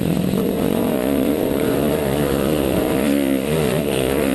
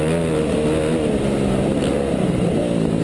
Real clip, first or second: second